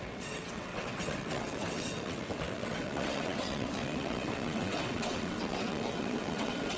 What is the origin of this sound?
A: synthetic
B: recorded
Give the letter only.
A